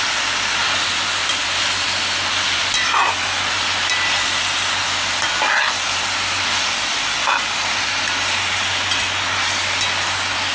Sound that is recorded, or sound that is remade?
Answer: recorded